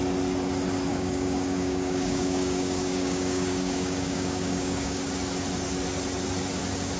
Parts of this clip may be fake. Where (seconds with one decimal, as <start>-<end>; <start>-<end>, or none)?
0.9-5.1